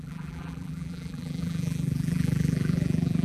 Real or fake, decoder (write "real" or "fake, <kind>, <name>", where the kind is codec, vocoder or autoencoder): fake, vocoder, BigVGAN v2